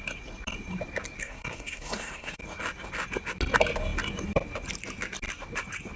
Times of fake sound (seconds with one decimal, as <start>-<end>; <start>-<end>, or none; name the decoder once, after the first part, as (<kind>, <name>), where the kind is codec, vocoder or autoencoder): 1.2-2.4 (codec, SNAC)

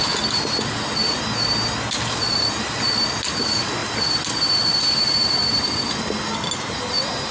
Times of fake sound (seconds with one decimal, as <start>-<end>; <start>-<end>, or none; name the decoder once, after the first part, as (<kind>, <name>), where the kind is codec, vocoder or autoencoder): none